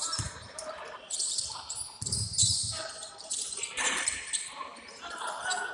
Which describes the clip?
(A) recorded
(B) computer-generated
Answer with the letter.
B